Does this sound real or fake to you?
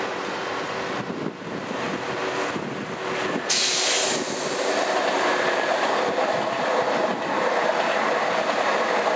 real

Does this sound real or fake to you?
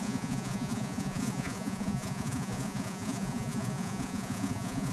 fake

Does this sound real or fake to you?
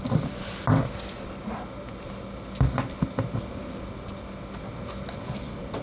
real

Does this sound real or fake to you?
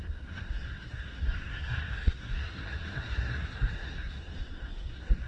fake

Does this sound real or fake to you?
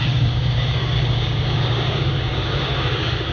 fake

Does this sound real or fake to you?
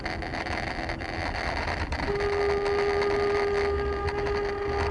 real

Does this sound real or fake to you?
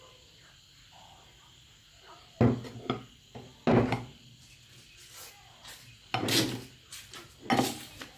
real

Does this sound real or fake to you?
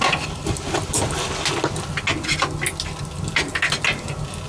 real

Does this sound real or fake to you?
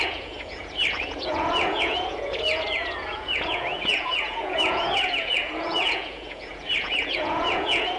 fake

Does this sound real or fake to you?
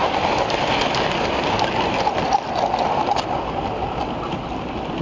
real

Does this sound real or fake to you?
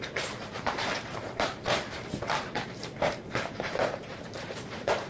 fake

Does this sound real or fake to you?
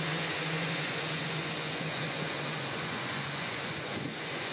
fake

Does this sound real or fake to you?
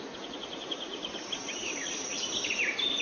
real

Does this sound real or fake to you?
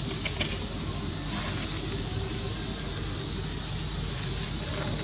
real